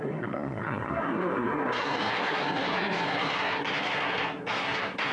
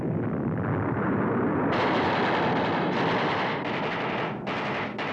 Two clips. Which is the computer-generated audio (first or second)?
first